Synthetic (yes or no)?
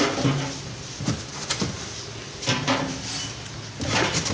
no